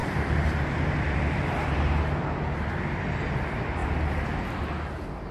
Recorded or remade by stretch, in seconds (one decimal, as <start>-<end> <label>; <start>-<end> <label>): 0.0-2.2 remade; 2.2-5.3 recorded

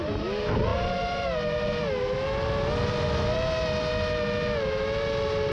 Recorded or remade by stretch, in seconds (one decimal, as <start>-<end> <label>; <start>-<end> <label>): 0.0-5.5 recorded